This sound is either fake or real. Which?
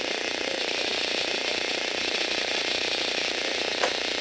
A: real